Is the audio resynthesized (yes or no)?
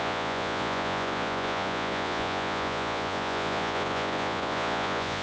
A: yes